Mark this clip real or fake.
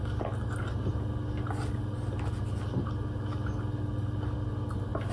real